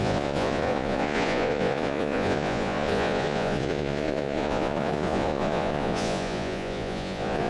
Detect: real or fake fake